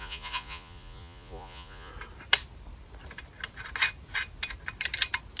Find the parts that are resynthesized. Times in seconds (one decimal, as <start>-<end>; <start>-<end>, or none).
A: 0.0-1.9